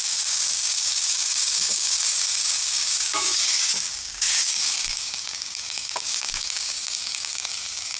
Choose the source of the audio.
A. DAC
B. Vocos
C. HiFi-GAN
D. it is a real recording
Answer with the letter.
A